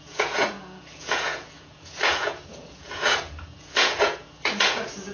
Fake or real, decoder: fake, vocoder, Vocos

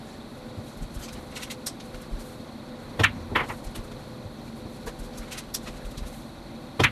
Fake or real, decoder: real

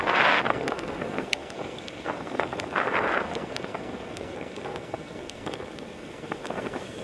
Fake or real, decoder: fake, codec, SNAC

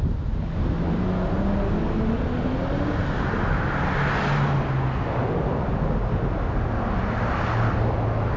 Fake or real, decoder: real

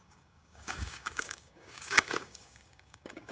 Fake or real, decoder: fake, codec, DAC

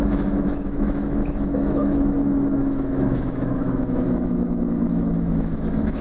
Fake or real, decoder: fake, autoencoder, DAC-VAE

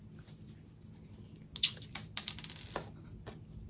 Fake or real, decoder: real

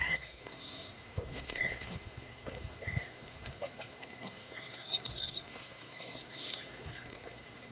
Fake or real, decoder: fake, codec, SNAC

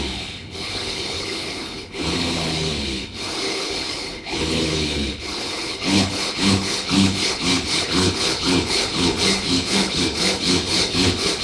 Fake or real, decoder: fake, codec, HILCodec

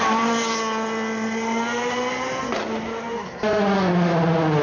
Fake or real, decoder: real